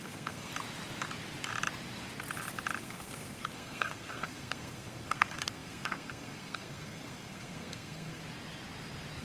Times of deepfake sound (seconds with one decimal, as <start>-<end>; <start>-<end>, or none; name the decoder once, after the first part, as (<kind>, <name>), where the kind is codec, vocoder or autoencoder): 0.0-0.5 (codec, SNAC); 2.8-8.2